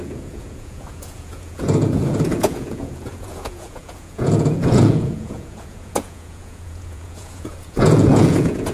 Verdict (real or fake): fake